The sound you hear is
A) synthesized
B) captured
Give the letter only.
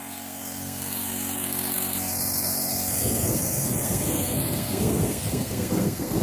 A